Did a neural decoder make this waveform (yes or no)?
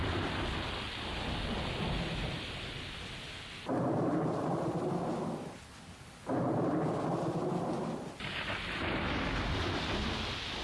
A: no